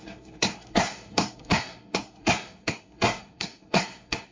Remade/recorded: remade